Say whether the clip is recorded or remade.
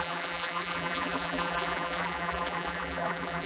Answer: remade